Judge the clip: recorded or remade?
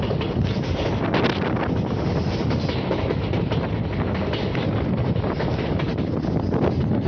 recorded